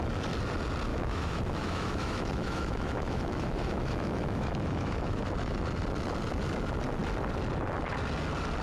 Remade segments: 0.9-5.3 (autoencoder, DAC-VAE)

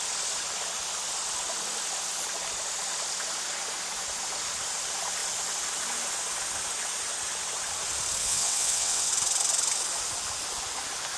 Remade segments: 8.2-9.1 (vocoder, WaveNeXt)

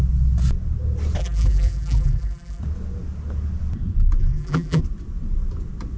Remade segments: 1.2-2.6 (vocoder, BigVGAN v2); 4.2-4.8

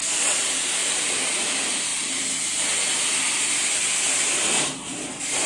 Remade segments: 0.8-1.5 (vocoder, BigVGAN v2)

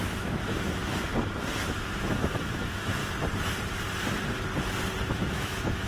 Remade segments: 0.0-1.1 (autoencoder, DAC-VAE); 2.0-3.0; 5.0-5.9

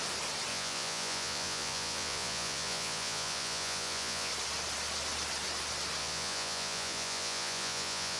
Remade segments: 0.5-4.3 (vocoder, Vocos); 6.0-8.2

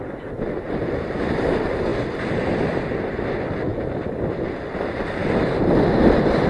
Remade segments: 5.2-5.9 (vocoder, BigVGAN v2)